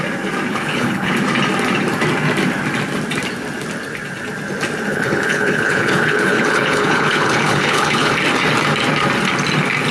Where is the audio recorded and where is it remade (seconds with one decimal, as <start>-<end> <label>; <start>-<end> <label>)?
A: 0.0-0.5 recorded; 0.5-1.1 remade; 1.1-4.9 recorded; 4.9-8.1 remade; 8.1-9.9 recorded